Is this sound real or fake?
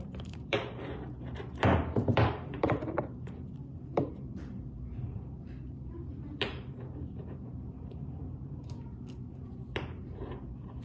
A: fake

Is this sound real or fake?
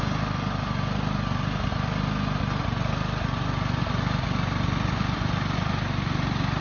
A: real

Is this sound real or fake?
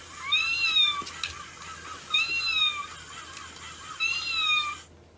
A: real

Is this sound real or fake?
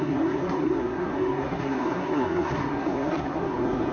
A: fake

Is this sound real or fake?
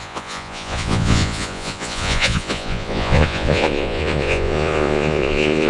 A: fake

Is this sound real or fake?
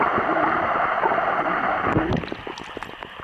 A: real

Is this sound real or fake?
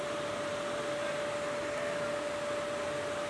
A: real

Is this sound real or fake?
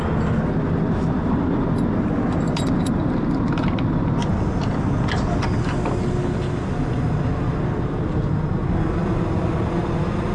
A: real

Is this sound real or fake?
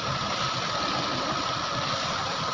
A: real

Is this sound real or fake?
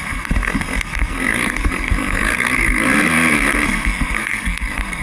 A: fake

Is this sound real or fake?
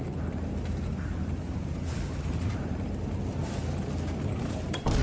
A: real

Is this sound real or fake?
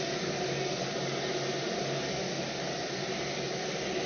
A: real